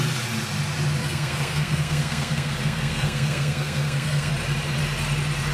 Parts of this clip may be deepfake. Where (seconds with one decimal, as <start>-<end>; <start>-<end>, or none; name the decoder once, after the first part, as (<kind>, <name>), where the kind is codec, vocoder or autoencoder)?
1.0-4.3 (codec, SNAC)